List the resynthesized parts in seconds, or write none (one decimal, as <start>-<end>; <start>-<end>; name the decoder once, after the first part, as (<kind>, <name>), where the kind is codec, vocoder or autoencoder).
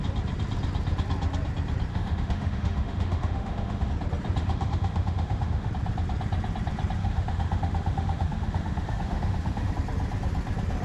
1.9-3.9 (autoencoder, DAC-VAE); 4.4-5.7; 7.0-9.7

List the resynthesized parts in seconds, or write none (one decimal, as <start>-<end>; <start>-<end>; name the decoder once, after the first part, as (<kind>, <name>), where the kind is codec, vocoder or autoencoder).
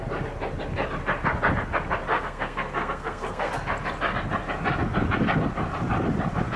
2.1-3.5 (codec, SNAC)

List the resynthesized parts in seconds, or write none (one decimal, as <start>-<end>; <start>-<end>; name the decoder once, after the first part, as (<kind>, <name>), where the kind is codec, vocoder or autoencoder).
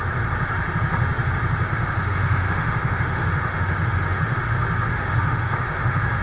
1.7-4.4 (autoencoder, DAC-VAE); 4.9-6.2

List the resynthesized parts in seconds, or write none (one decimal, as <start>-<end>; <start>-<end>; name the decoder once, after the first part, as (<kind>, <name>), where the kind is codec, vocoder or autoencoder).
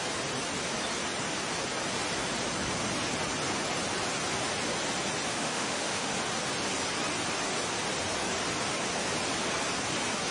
5.3-6.1 (autoencoder, DAC-VAE)